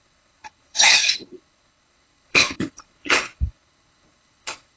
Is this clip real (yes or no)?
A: no